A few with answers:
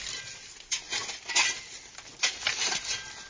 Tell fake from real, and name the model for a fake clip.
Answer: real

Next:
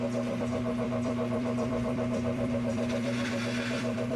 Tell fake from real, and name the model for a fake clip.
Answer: fake, vocoder, BigVGAN v2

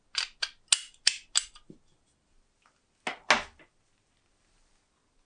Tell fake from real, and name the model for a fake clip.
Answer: real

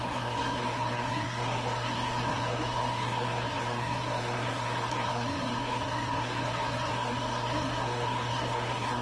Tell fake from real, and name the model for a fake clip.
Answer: fake, codec, SNAC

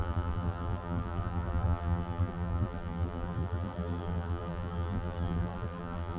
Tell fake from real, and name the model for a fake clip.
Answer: fake, vocoder, BigVGAN v2